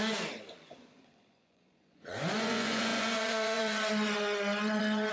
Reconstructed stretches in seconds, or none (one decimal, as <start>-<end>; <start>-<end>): 0.5-5.1